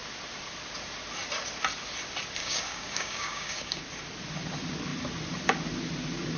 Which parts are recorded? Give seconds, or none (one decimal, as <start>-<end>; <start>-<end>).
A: 0.0-2.4; 3.8-6.4